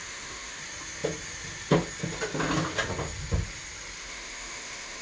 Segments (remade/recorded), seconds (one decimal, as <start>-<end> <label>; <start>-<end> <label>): 0.0-0.6 remade; 0.6-4.0 recorded; 4.0-5.0 remade